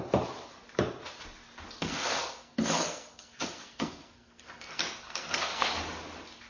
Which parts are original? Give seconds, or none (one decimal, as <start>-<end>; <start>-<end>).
0.0-1.8; 5.7-6.5